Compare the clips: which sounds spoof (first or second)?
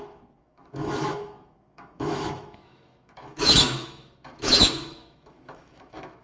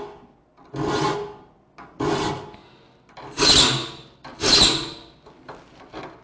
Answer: first